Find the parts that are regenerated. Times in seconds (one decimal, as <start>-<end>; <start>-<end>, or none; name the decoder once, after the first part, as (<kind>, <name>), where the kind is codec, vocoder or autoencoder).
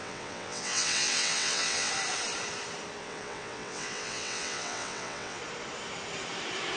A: 0.0-1.9 (vocoder, WaveNeXt); 3.0-5.4